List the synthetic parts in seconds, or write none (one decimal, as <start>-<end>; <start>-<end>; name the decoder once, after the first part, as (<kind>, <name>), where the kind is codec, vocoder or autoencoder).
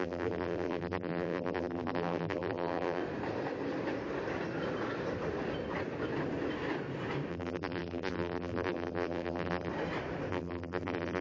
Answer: 0.0-3.0 (vocoder, BigVGAN v2); 7.3-9.7; 10.3-11.2